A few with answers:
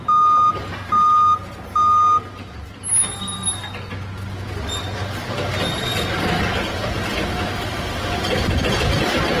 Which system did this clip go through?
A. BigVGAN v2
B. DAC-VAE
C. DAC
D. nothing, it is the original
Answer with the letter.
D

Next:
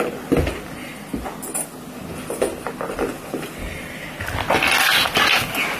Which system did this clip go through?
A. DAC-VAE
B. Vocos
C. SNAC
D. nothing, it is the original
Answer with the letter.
D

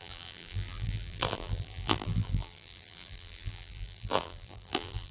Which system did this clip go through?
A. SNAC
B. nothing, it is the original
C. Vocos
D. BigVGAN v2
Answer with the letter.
D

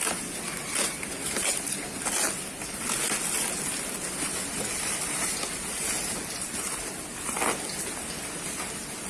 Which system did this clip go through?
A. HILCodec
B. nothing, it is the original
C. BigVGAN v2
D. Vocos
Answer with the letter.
B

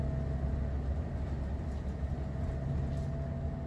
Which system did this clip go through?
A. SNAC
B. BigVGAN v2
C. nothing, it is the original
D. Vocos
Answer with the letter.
C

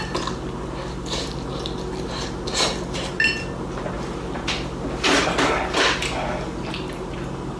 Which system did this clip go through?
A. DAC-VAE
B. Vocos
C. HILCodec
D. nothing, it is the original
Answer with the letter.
D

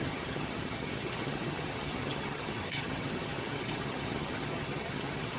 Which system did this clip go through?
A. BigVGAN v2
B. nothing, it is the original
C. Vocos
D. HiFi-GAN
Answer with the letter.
D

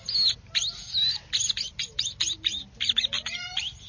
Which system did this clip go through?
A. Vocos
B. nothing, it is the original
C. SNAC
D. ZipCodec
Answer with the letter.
B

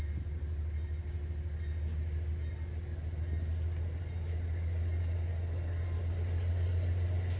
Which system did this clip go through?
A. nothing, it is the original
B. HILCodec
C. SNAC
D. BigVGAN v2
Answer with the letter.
A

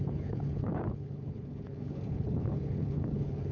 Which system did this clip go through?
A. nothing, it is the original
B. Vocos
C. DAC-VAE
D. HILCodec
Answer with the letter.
D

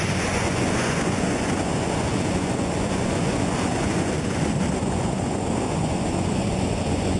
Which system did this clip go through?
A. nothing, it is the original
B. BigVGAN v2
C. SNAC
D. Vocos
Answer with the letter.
D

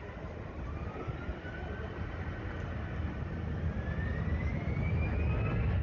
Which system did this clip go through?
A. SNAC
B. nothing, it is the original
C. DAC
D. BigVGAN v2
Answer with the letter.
B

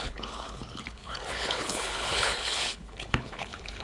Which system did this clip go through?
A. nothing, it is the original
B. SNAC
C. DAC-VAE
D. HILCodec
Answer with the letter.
D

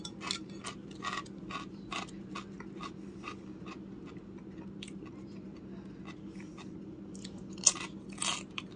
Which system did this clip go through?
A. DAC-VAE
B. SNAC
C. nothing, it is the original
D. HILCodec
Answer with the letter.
C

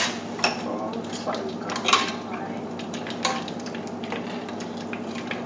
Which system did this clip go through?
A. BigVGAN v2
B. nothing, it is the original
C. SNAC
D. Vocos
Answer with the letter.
A